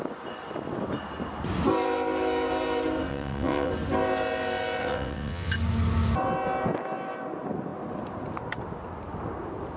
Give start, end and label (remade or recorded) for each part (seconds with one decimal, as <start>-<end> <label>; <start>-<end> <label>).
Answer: 0.0-3.1 recorded; 3.1-3.7 remade; 3.7-4.8 recorded; 4.8-5.5 remade; 5.5-9.8 recorded